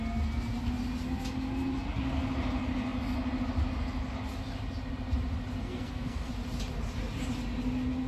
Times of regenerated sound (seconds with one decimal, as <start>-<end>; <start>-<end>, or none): 5.6-6.3